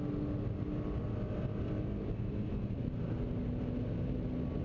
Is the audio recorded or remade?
recorded